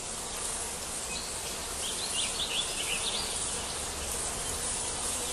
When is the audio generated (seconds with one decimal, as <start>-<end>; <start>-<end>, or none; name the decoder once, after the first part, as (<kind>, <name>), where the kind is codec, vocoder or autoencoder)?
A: none